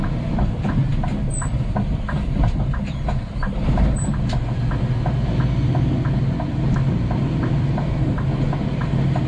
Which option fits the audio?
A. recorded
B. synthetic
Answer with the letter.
A